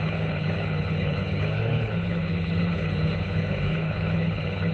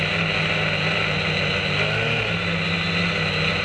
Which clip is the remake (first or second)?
first